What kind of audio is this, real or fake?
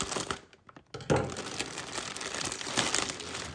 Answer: real